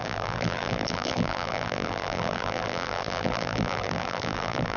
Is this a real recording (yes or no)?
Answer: no